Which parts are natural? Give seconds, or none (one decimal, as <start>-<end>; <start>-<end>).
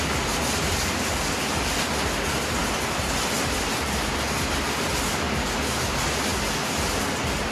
0.0-7.5